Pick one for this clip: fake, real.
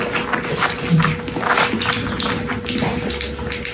real